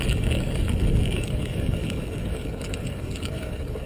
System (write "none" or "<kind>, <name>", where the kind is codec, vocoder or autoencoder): codec, DAC